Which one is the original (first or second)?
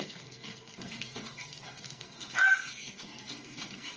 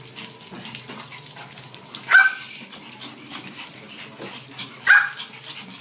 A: second